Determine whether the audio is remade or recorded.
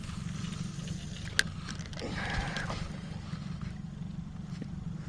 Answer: recorded